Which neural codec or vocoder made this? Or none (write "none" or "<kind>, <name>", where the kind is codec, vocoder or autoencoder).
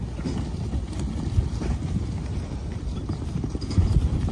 none